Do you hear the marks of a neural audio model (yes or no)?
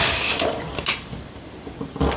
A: no